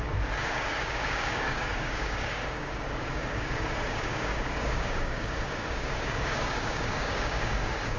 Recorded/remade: remade